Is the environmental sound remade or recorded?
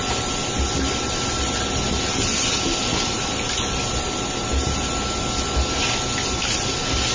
recorded